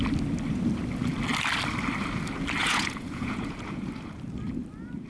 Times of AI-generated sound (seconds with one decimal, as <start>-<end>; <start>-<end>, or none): 2.6-3.9